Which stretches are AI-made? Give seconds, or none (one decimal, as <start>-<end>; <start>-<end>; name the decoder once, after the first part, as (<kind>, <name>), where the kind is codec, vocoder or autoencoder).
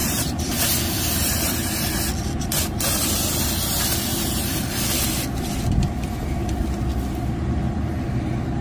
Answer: 0.0-0.6 (vocoder, BigVGAN v2); 4.1-4.7